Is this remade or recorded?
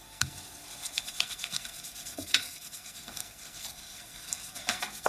remade